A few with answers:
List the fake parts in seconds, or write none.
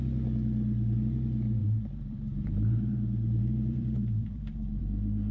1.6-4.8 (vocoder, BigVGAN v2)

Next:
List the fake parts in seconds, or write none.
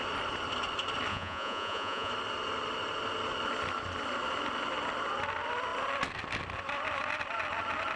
1.1-2.1 (vocoder, Vocos)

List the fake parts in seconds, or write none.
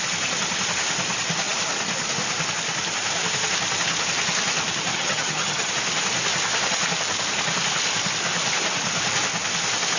4.9-5.7 (vocoder, HiFi-GAN)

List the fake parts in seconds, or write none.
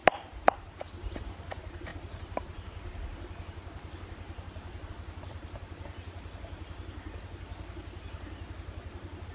none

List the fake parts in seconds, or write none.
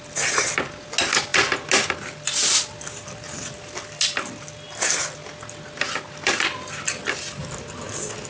none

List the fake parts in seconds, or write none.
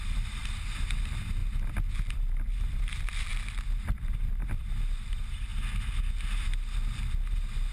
0.0-1.4 (vocoder, BigVGAN v2); 2.1-5.5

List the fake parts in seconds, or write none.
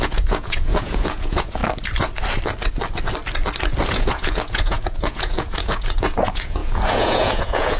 0.0-1.6 (vocoder, Vocos); 3.9-7.8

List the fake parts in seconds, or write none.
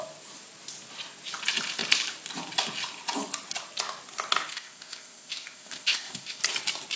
4.5-6.4 (codec, ZipCodec)